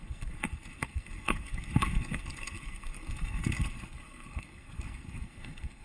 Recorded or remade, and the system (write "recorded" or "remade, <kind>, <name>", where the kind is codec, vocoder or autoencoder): remade, codec, SNAC